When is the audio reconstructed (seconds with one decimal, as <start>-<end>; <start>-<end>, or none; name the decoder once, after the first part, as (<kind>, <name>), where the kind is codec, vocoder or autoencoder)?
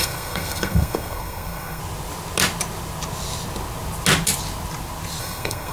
0.0-1.8 (codec, SNAC); 5.2-5.7